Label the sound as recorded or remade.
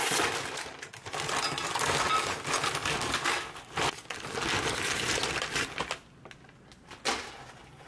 recorded